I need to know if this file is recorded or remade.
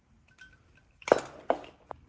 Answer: recorded